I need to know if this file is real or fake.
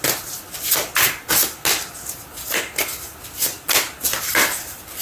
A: real